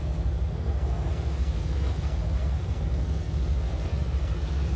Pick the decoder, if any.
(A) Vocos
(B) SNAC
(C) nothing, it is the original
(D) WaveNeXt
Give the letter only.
B